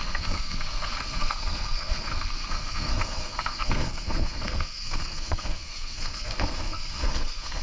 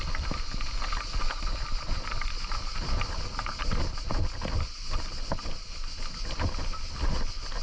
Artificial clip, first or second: first